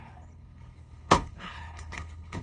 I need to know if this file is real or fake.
fake